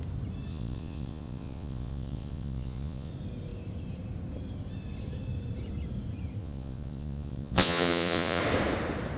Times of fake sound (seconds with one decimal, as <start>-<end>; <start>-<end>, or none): 0.5-3.1; 6.4-8.4